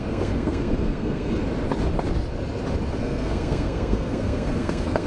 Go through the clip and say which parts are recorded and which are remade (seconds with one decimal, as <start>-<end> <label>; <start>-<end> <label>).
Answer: 0.0-1.4 remade; 1.4-3.0 recorded; 3.0-5.1 remade